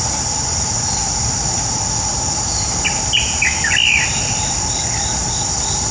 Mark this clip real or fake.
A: real